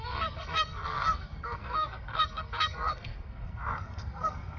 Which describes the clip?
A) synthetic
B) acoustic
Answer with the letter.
A